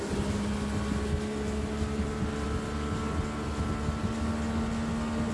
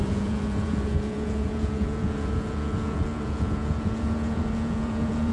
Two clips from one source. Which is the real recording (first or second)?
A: first